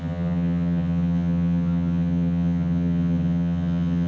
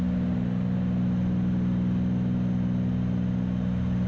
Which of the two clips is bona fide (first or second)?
second